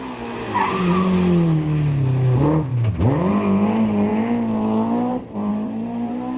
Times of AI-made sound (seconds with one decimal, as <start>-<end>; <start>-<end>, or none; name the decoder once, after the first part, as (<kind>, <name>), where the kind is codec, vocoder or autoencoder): 5.5-6.4 (vocoder, BigVGAN v2)